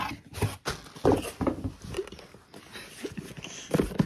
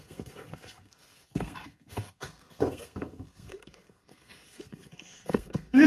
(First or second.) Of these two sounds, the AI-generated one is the second